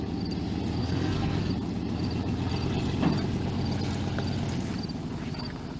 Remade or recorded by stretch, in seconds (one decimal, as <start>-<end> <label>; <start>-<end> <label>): 0.0-0.8 recorded; 0.8-1.5 remade; 1.5-5.8 recorded

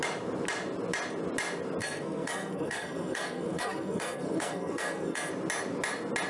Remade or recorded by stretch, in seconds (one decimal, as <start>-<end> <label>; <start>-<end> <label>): 0.0-1.8 recorded; 1.8-5.3 remade; 5.3-6.3 recorded

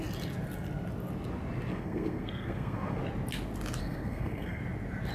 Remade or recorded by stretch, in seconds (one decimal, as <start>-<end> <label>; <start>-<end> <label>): 0.0-1.7 recorded; 1.7-3.0 remade; 3.0-3.8 recorded; 3.8-4.6 remade; 4.6-5.1 recorded

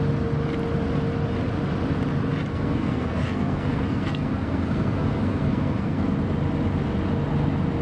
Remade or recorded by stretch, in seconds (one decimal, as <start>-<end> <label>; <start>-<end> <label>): 0.0-2.5 recorded; 2.5-6.0 remade; 6.0-7.8 recorded